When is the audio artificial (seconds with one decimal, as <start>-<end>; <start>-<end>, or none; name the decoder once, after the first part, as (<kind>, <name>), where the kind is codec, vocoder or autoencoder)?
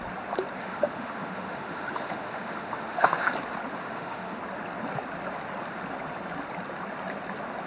0.6-3.3 (autoencoder, DAC-VAE); 3.7-4.4